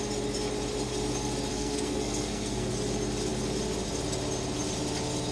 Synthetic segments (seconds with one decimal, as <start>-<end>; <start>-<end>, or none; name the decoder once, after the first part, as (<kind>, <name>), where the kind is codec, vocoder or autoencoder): 1.5-2.7 (codec, SNAC)